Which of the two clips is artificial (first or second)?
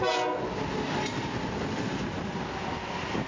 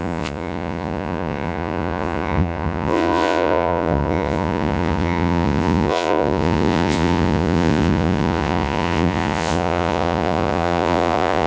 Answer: second